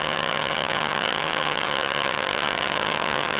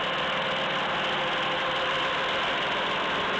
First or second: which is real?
second